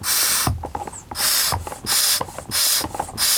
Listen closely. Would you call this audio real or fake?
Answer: real